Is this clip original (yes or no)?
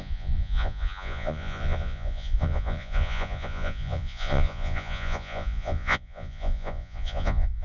no